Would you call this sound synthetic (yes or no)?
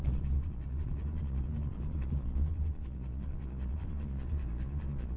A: yes